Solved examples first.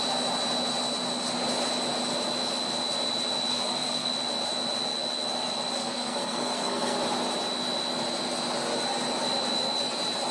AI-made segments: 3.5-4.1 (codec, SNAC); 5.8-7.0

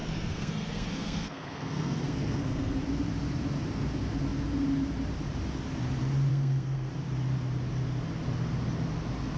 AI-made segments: 0.0-2.8 (codec, SNAC); 6.3-6.9

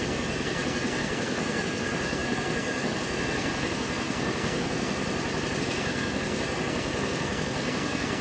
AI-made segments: 0.0-5.0 (codec, SNAC); 5.6-8.2

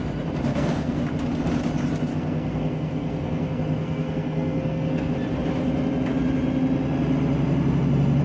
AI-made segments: 0.5-1.0 (codec, SNAC); 2.1-5.1

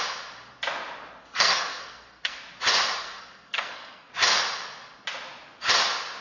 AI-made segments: 1.2-2.4 (codec, SNAC); 3.0-4.1

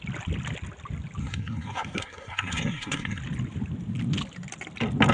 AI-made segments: 1.2-3.2 (codec, SNAC)